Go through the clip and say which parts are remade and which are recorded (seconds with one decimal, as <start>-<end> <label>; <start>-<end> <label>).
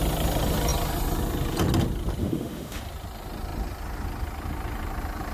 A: 0.0-2.2 recorded; 2.2-2.8 remade; 2.8-5.3 recorded